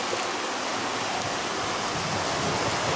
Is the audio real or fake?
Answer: real